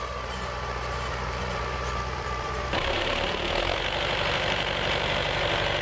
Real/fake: fake